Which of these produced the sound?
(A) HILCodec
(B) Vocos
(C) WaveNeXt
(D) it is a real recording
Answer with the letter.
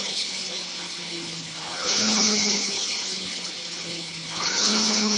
A